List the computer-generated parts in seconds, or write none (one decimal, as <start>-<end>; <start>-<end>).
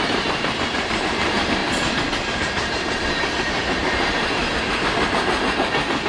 0.0-1.6; 2.3-4.4; 5.2-6.1